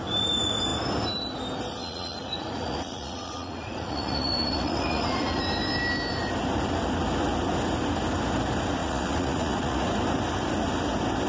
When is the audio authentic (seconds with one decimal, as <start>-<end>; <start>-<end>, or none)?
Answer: 0.0-1.8; 5.4-8.8; 9.9-11.3